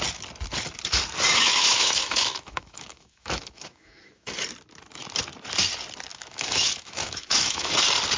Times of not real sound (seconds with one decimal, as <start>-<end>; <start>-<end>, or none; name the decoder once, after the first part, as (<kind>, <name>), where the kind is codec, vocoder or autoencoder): 1.3-4.3 (autoencoder, DAC-VAE); 6.1-7.7